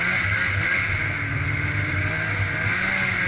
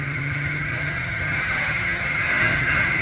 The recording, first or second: first